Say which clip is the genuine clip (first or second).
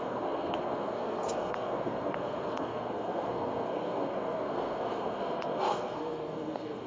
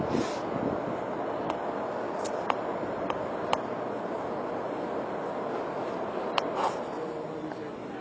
second